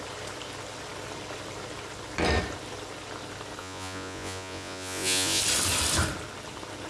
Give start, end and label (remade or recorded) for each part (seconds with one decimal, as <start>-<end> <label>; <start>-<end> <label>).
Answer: 0.0-3.6 recorded; 3.6-5.4 remade; 5.4-6.9 recorded